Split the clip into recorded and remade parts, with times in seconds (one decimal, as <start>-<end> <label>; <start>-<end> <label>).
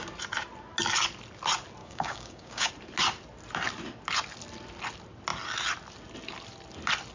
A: 0.0-1.8 recorded; 1.8-2.7 remade; 2.7-7.1 recorded